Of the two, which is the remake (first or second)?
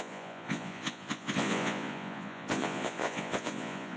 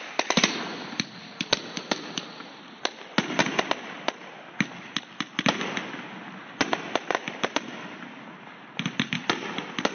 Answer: first